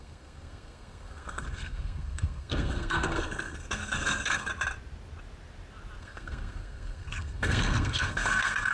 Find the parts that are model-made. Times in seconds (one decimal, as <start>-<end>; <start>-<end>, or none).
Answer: 0.0-4.5; 6.0-8.7